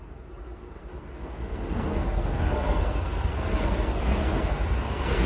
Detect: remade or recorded remade